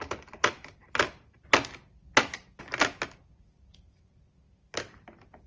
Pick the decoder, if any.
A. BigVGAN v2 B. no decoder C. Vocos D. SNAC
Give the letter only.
B